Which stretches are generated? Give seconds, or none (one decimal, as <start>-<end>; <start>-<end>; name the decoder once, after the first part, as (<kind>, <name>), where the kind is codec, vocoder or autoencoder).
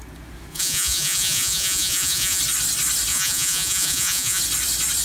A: 0.5-2.4 (vocoder, Vocos); 3.1-4.4